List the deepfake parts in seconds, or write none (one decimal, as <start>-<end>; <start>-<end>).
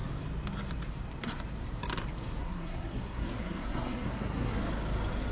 2.4-4.6